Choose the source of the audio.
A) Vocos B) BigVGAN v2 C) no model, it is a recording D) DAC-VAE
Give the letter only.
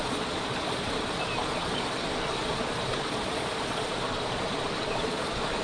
A